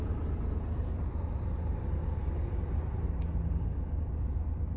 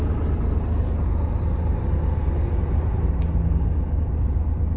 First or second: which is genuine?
second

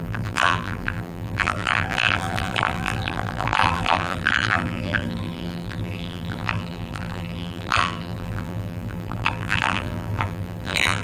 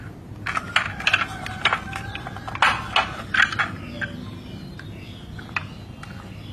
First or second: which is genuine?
second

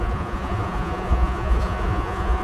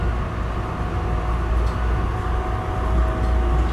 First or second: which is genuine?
second